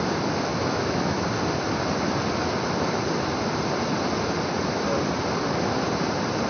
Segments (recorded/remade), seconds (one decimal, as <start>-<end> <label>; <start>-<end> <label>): 0.0-0.5 recorded; 0.5-1.2 remade; 1.2-6.5 recorded